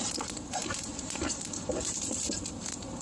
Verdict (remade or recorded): recorded